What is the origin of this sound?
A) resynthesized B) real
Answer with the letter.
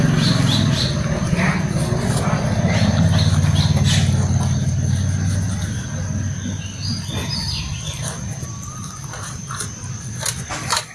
B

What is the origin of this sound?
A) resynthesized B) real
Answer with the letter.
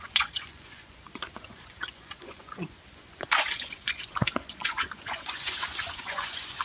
A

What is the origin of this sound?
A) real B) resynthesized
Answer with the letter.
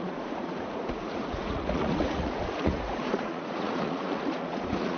B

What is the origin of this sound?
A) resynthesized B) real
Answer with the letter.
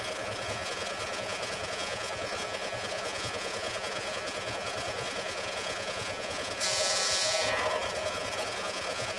A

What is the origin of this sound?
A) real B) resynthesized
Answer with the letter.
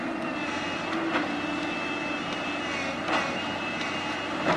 A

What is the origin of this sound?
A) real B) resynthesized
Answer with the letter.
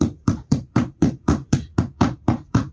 B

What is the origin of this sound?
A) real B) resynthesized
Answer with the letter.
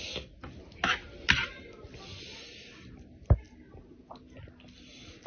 A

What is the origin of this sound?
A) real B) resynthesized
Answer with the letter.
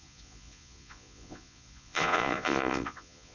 B